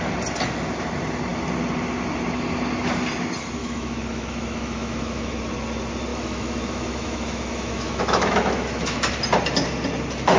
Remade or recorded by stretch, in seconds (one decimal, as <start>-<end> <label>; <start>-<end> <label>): 0.0-3.6 recorded; 3.6-5.4 remade; 5.4-6.1 recorded; 6.1-9.1 remade; 9.1-10.4 recorded

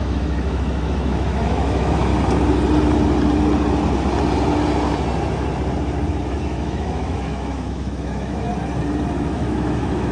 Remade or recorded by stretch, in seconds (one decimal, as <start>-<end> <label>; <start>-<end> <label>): 0.0-2.1 remade; 2.1-6.3 recorded; 6.3-8.5 remade; 8.5-9.1 recorded; 9.1-10.1 remade

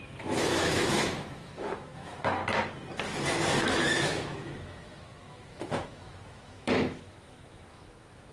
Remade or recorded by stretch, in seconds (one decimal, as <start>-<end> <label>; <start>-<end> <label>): 0.0-2.4 remade; 2.4-3.7 recorded; 3.7-8.3 remade

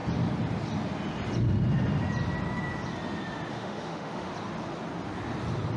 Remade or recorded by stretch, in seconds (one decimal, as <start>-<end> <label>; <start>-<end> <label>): 0.0-3.5 recorded; 3.5-4.3 remade; 4.3-5.8 recorded

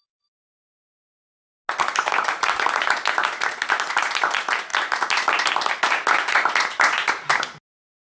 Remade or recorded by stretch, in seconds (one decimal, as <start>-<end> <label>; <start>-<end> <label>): 0.0-8.0 recorded

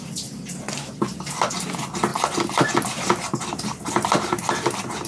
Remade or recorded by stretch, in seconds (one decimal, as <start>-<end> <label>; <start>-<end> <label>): 0.0-5.1 recorded

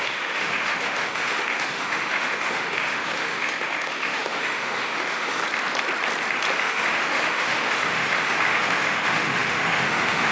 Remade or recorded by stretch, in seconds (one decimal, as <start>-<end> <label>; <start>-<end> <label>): 0.0-5.4 remade; 5.4-6.6 recorded; 6.6-10.3 remade

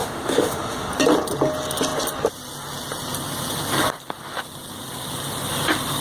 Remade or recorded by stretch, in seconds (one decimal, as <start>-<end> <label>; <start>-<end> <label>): 0.0-0.9 remade; 0.9-6.0 recorded